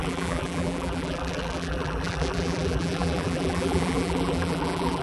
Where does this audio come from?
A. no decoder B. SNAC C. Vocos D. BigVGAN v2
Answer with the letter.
D